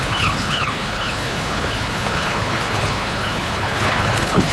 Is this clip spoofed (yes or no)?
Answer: yes